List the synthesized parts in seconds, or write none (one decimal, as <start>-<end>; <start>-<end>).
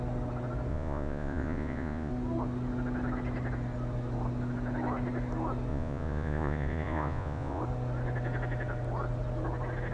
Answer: 0.7-2.1; 5.7-7.6